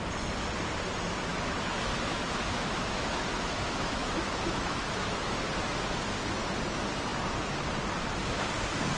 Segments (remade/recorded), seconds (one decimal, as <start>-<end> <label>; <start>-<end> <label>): 0.0-1.3 recorded; 1.3-5.4 remade; 5.4-9.0 recorded